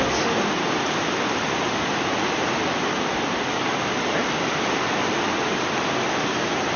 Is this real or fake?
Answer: real